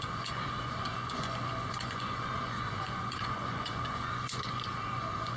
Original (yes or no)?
no